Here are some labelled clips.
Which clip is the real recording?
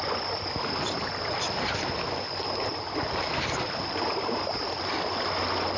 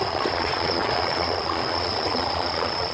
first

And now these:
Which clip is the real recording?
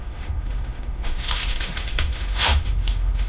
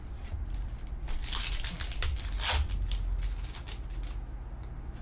second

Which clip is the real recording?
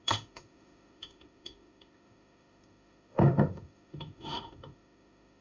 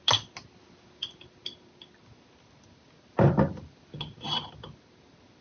second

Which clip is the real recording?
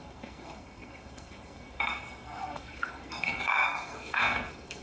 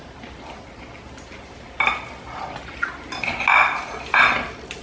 second